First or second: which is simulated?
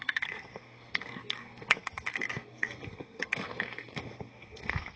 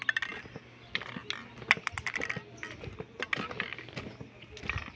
first